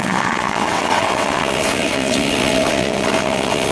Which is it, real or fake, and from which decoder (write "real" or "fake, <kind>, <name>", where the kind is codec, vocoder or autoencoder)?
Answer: fake, vocoder, WaveNeXt